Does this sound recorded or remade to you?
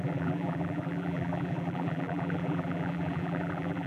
remade